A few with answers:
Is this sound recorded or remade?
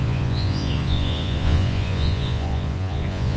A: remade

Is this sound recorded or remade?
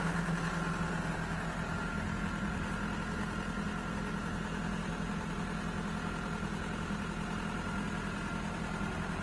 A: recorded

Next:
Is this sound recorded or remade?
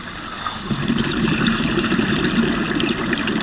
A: recorded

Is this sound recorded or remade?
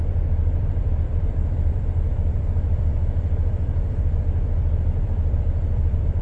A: remade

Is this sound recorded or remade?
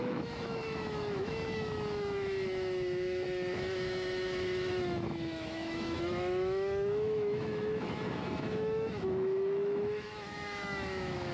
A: remade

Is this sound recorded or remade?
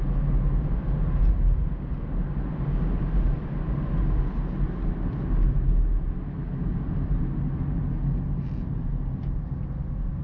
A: recorded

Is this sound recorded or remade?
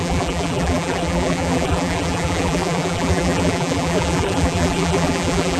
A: remade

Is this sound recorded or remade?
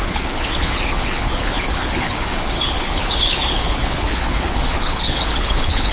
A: remade